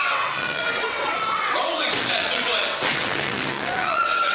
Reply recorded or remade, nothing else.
remade